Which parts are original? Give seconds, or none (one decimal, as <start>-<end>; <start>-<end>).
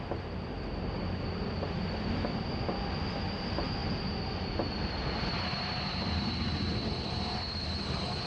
0.0-8.3